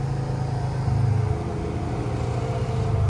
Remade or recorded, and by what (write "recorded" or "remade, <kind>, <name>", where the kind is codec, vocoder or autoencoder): recorded